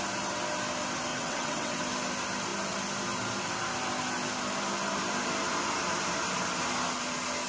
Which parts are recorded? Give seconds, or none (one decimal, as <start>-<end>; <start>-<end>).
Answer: 0.0-1.1; 1.8-7.5